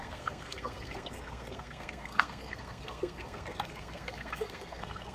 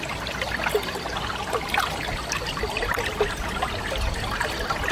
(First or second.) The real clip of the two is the second